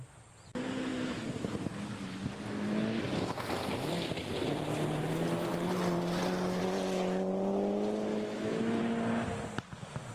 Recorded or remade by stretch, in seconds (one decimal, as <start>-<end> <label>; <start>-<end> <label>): 0.0-8.1 recorded; 8.1-8.8 remade; 8.8-10.1 recorded